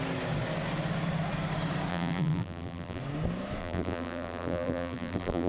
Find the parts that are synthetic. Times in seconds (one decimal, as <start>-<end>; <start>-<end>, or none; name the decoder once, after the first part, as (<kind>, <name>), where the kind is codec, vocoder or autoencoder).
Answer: 1.9-3.0 (vocoder, BigVGAN v2); 3.6-5.5